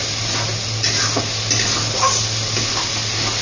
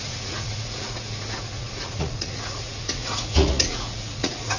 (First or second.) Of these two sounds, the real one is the first